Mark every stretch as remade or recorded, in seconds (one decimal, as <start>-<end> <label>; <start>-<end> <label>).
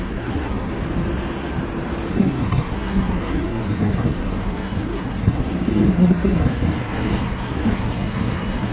0.0-0.7 remade; 0.7-2.1 recorded; 2.1-8.7 remade